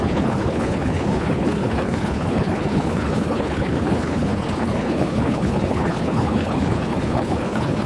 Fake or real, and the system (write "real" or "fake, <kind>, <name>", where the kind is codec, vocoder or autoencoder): fake, codec, HILCodec